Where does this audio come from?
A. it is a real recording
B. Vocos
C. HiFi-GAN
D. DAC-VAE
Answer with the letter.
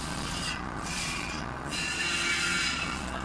B